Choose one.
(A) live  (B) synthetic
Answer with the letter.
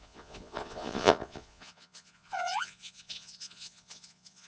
B